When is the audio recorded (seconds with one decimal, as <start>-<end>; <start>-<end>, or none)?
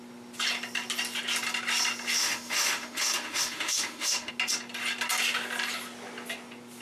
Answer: 0.0-2.2; 4.3-6.8